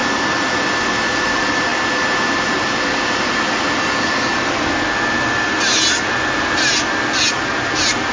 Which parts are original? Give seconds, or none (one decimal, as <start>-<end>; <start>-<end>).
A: 0.0-8.1